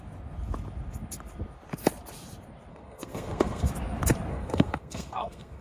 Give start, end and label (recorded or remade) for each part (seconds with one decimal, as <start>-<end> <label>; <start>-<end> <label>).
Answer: 0.0-2.7 recorded; 2.7-3.7 remade; 3.7-4.3 recorded; 4.3-5.6 remade